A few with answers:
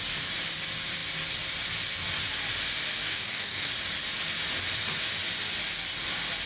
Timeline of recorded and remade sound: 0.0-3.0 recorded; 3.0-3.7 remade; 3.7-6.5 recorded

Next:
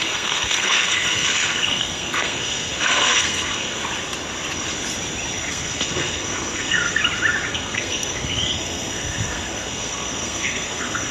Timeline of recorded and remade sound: 0.0-3.8 remade; 3.8-5.5 recorded; 5.5-7.0 remade; 7.0-7.5 recorded; 7.5-11.1 remade

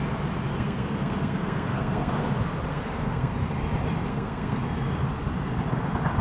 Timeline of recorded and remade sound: 0.0-0.5 recorded; 0.5-2.2 remade; 2.2-2.7 recorded; 2.7-3.3 remade; 3.3-4.1 recorded; 4.1-4.6 remade; 4.6-6.2 recorded

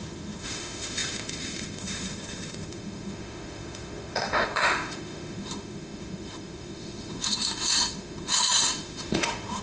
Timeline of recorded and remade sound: 0.0-9.6 remade

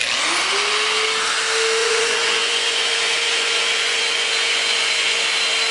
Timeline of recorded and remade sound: 0.0-1.8 recorded; 1.8-5.2 remade; 5.2-5.7 recorded

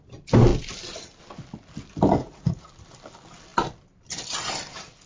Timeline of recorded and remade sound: 0.0-2.2 recorded; 2.2-2.7 remade; 2.7-5.1 recorded

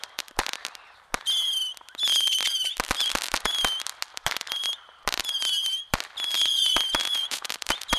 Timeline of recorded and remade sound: 0.0-7.0 recorded; 7.0-7.5 remade; 7.5-8.0 recorded